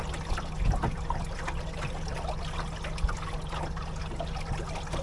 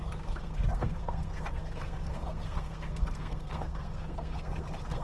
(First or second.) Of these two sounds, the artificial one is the second